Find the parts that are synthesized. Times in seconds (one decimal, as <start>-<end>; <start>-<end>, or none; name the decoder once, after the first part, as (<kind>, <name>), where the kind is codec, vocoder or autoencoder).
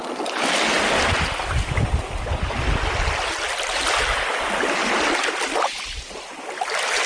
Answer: none